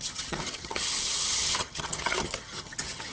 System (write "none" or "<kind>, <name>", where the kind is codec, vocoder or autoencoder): vocoder, HiFi-GAN